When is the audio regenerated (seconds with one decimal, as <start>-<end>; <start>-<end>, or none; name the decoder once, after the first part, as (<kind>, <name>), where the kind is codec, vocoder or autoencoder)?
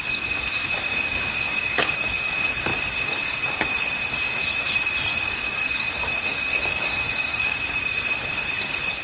0.9-2.3 (codec, DAC); 5.1-5.7; 6.3-7.6